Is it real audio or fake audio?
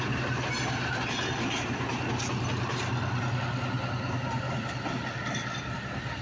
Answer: real